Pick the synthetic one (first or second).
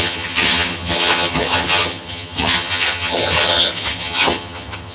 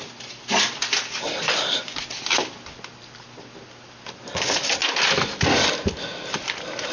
first